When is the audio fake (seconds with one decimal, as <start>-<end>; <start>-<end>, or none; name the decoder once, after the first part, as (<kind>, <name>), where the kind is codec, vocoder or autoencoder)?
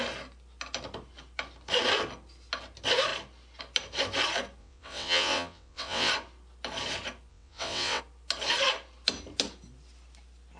4.6-6.1 (vocoder, WaveNeXt); 7.3-8.0